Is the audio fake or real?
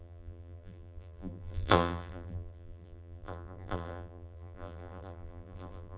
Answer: fake